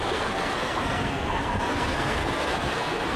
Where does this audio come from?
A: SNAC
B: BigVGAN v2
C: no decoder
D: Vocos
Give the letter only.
A